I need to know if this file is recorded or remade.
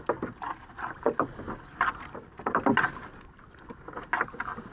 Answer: recorded